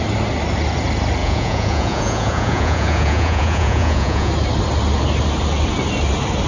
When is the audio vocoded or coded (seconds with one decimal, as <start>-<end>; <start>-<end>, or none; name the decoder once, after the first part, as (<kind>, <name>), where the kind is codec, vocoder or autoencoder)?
1.2-4.3 (vocoder, Vocos)